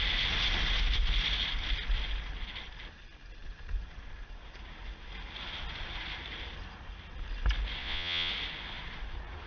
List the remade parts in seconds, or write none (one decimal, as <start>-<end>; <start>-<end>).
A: 7.8-8.3